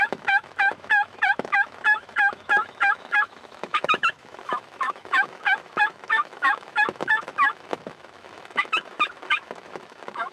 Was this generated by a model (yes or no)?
yes